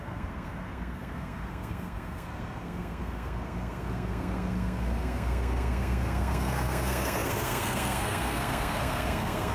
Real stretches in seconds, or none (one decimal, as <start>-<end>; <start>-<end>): none